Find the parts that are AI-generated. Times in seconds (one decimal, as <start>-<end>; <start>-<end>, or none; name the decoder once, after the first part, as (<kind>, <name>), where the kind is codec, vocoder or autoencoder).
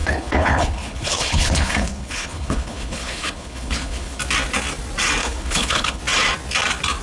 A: 0.0-4.2 (codec, HILCodec); 5.2-6.0